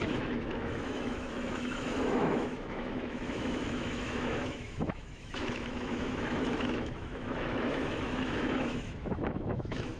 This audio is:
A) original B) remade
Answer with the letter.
B